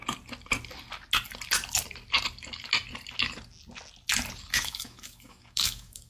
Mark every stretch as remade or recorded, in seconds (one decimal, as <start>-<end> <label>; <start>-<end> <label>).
0.0-4.5 recorded; 4.5-6.1 remade